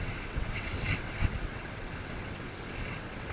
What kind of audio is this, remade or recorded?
remade